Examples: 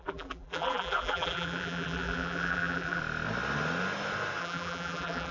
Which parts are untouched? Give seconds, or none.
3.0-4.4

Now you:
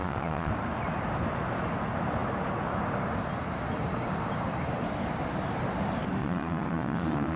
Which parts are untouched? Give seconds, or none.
0.5-6.2

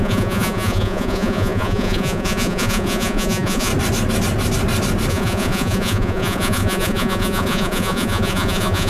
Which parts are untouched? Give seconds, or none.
3.7-5.1

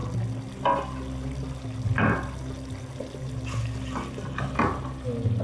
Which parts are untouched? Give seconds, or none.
0.0-5.4

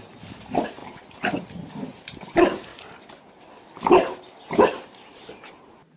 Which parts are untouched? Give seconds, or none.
0.8-1.4; 2.7-4.5

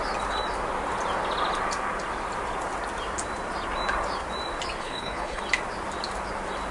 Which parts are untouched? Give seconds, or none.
0.0-4.8; 5.4-6.7

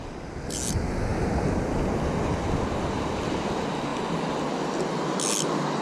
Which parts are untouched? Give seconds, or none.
0.0-5.8

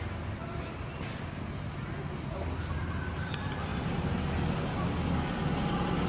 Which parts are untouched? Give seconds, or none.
0.0-6.1